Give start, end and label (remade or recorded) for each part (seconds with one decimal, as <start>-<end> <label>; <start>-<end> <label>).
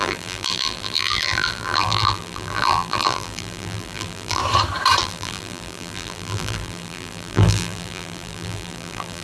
0.0-4.4 remade; 4.4-5.0 recorded; 5.0-9.2 remade